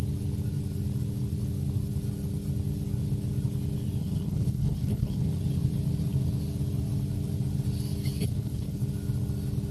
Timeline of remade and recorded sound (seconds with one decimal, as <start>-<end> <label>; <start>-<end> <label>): 0.0-4.0 recorded; 4.0-5.4 remade; 5.4-8.2 recorded; 8.2-8.8 remade; 8.8-9.7 recorded